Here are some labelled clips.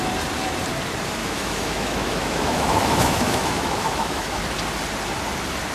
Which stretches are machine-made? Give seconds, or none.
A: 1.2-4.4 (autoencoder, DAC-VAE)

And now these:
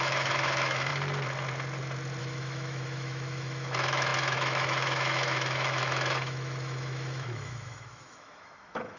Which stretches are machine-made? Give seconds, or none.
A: 0.0-0.9 (autoencoder, DAC-VAE); 2.2-9.0

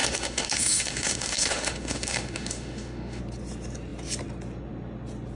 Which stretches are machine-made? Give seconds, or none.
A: 0.0-3.2 (autoencoder, DAC-VAE)

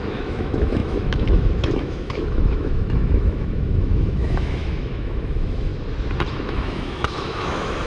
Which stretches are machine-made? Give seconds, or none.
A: 0.0-5.7 (autoencoder, DAC-VAE); 6.3-7.9